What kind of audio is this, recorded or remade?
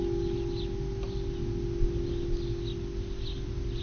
recorded